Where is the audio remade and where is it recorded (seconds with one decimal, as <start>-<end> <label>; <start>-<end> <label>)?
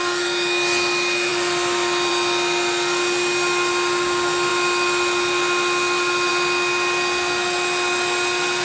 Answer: 0.0-8.6 recorded